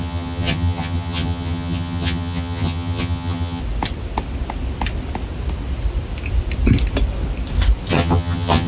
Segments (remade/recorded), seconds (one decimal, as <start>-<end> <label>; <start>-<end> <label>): 0.0-3.6 remade; 3.6-7.9 recorded; 7.9-8.7 remade